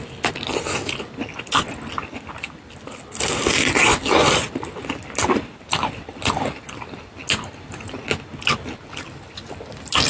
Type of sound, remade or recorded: recorded